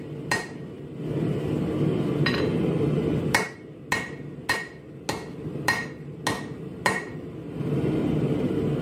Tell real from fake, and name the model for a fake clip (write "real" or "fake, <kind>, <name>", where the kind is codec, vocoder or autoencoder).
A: real